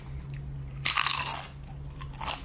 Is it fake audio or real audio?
real